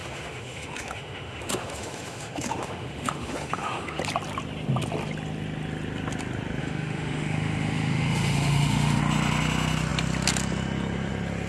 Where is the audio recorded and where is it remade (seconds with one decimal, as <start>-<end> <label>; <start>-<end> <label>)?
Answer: 0.0-4.0 remade; 4.0-6.6 recorded; 6.6-9.0 remade; 9.0-11.5 recorded